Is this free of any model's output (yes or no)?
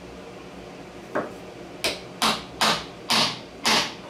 yes